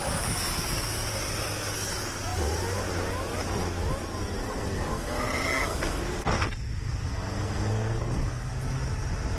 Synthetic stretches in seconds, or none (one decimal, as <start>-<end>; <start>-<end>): 4.4-8.5